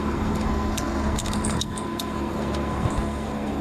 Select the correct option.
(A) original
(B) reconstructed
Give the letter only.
B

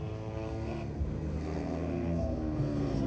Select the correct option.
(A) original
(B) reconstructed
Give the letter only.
B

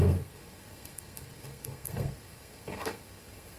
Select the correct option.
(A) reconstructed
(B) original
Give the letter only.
A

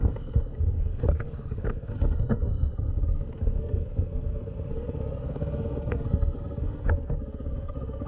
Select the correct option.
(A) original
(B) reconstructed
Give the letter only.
B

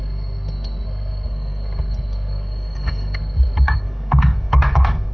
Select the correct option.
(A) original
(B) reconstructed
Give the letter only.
B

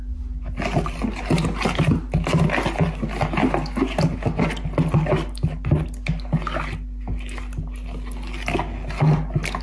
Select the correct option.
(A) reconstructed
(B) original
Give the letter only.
B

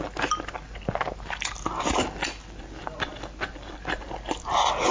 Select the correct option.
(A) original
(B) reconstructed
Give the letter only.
A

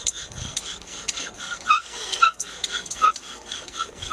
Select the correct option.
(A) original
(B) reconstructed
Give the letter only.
B